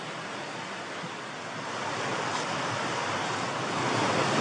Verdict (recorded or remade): recorded